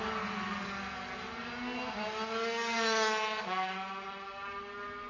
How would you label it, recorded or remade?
recorded